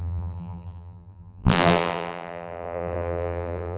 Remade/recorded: remade